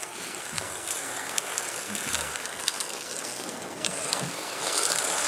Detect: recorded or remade remade